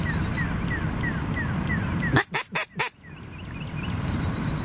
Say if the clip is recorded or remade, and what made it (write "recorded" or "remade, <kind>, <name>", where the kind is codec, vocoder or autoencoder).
recorded